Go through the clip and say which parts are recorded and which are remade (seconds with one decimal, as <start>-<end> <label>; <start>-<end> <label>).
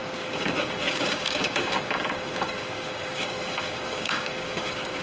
0.0-5.0 remade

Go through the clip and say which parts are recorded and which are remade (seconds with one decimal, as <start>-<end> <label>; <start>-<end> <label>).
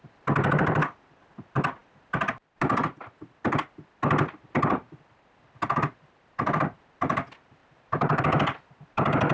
0.0-7.6 recorded; 7.6-8.2 remade; 8.2-9.3 recorded